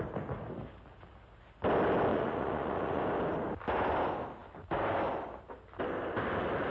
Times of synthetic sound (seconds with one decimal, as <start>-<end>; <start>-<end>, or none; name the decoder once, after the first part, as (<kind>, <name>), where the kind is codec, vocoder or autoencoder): 2.1-3.0 (vocoder, Vocos)